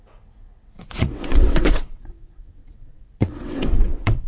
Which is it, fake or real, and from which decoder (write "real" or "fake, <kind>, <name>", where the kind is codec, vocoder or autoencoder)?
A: fake, vocoder, WaveNeXt